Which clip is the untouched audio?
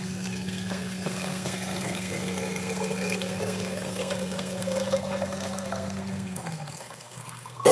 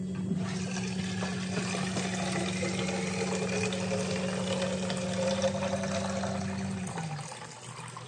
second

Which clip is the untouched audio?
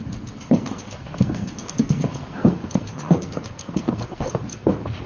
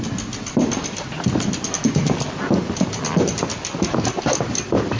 second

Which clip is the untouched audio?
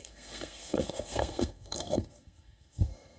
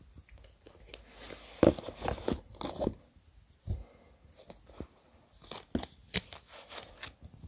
second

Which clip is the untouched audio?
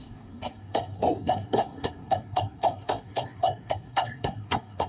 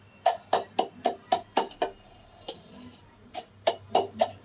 second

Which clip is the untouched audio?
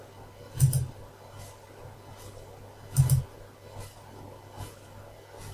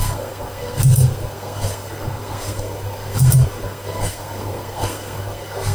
first